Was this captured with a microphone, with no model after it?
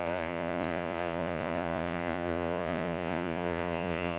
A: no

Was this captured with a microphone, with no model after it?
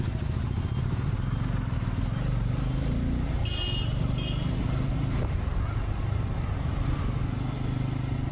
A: yes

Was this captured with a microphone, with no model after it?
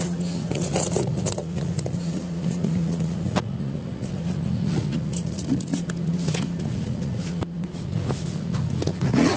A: no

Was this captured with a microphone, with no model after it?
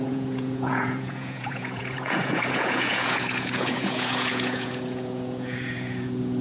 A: no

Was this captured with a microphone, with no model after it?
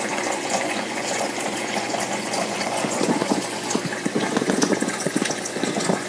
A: no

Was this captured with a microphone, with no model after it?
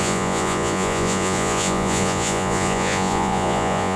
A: no